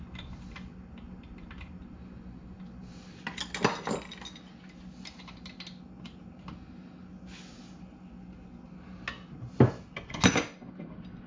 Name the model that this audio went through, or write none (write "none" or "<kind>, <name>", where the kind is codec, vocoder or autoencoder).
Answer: none